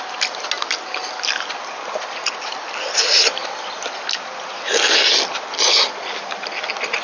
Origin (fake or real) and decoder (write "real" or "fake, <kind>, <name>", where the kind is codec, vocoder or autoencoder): real